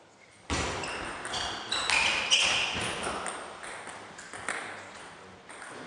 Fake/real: real